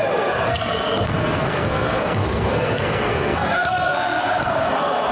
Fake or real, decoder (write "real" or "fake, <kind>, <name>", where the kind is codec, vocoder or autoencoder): fake, codec, SNAC